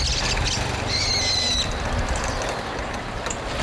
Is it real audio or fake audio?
real